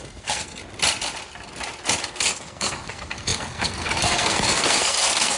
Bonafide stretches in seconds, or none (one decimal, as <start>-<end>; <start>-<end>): 0.6-2.0